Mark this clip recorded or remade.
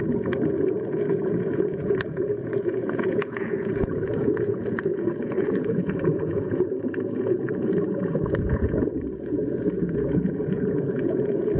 remade